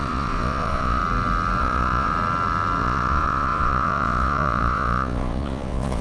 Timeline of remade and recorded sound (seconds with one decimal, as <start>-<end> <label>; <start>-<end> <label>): 0.0-1.0 remade; 1.0-1.6 recorded; 1.6-2.1 remade; 2.1-2.8 recorded; 2.8-6.0 remade